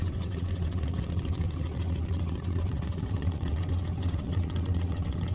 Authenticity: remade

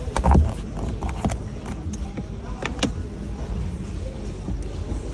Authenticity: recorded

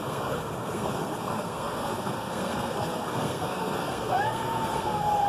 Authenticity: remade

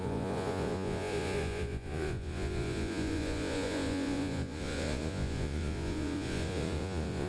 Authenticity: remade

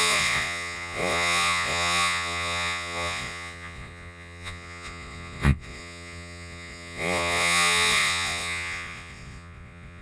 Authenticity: remade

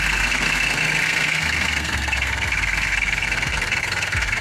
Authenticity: remade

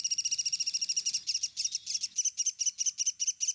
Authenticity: recorded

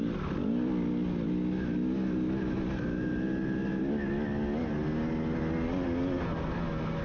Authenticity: recorded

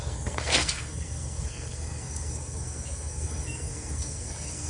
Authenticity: remade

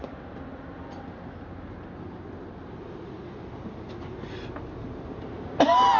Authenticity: recorded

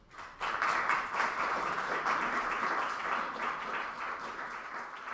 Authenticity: recorded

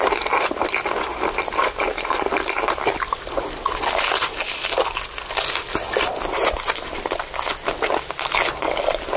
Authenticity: recorded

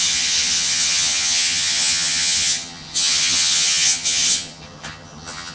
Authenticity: remade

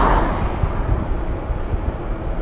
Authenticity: recorded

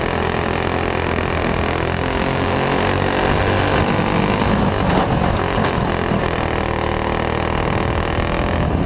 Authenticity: recorded